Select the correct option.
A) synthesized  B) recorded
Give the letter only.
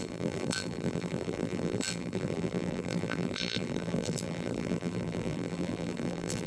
A